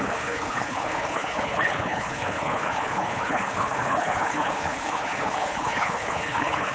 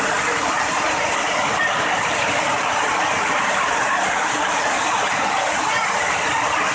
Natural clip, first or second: second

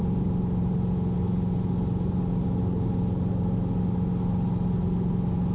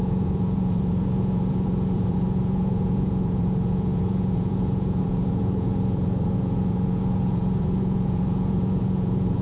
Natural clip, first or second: first